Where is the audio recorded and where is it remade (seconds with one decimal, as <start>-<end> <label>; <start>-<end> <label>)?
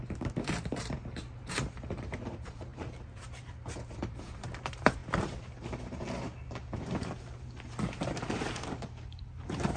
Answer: 0.0-9.8 remade